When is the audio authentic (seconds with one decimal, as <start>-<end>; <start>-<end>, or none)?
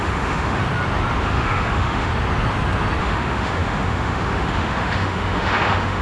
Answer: 0.6-1.2; 2.1-3.0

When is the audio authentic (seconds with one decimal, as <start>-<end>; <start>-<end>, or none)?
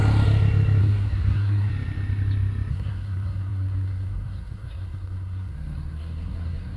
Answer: 0.0-0.8; 1.7-2.7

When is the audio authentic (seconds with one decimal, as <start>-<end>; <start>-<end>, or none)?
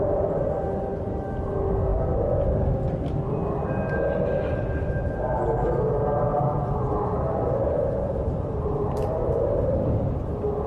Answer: 0.0-6.3; 9.9-10.7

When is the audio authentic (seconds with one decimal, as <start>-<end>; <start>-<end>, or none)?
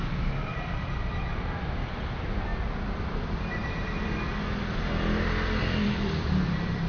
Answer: 2.5-3.1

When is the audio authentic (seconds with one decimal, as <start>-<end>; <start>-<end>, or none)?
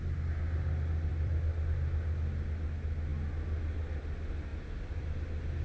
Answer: 0.0-1.1; 1.7-5.6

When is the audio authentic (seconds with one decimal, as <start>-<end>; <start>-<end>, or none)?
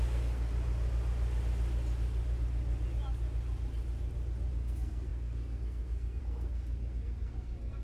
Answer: 0.5-4.5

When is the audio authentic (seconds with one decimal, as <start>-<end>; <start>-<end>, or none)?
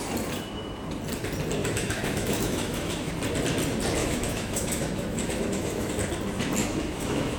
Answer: 0.0-1.6; 3.1-4.0; 5.9-6.6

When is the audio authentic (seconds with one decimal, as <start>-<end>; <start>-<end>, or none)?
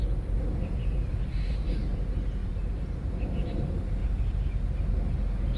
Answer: 1.7-5.6